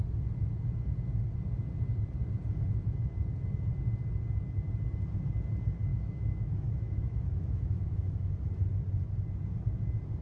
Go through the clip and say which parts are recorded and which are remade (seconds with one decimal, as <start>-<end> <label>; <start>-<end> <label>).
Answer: 0.0-5.9 recorded; 5.9-8.3 remade; 8.3-10.2 recorded